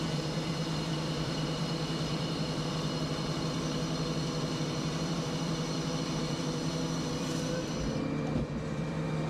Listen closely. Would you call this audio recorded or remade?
remade